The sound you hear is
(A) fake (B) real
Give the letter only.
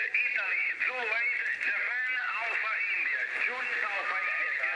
B